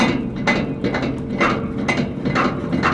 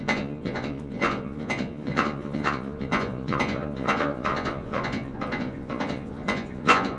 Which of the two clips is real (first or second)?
first